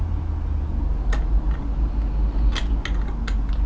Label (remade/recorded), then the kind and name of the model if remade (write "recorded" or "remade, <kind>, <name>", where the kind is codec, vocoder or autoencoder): recorded